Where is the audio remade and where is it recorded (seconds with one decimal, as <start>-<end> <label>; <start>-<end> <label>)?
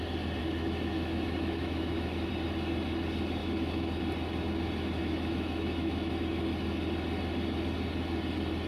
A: 0.0-0.4 recorded; 0.4-2.3 remade; 2.3-3.4 recorded; 3.4-4.0 remade; 4.0-5.0 recorded; 5.0-6.2 remade; 6.2-8.7 recorded